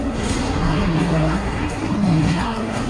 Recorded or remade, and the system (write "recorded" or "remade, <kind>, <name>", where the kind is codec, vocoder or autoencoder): remade, codec, SNAC